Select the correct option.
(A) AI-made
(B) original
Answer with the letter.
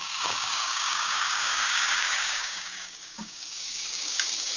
A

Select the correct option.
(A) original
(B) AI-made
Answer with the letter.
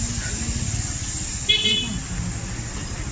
A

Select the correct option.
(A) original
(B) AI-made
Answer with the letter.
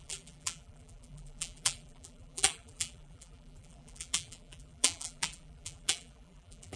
B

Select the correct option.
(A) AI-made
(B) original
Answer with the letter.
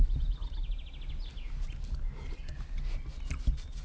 B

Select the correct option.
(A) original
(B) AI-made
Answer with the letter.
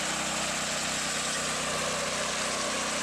A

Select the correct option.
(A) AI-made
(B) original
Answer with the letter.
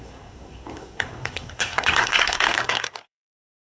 A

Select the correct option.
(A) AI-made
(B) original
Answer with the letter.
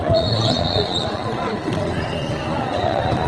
A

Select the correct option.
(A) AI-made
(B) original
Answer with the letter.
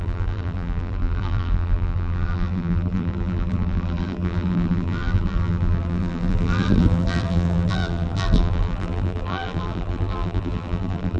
A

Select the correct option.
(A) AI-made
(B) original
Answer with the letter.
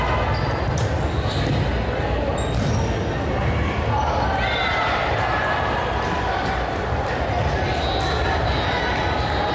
B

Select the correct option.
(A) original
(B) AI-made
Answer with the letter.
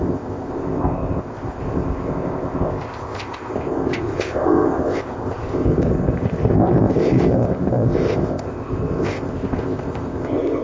B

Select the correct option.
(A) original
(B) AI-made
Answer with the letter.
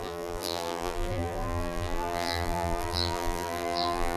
B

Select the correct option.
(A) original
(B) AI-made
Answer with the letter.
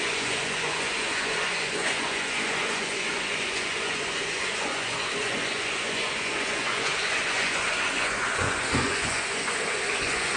B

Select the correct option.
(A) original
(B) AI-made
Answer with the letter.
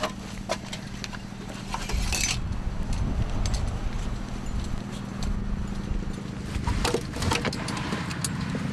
A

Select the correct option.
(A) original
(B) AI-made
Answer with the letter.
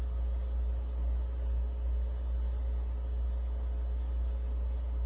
A